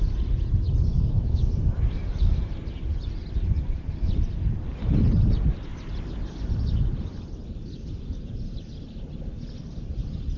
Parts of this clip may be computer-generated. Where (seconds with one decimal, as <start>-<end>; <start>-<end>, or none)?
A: 0.9-1.5